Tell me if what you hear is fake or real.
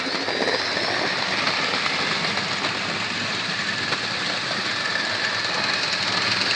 real